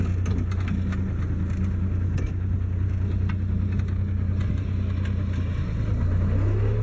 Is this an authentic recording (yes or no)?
yes